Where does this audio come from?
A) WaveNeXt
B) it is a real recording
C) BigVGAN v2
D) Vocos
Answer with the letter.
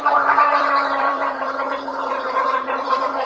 C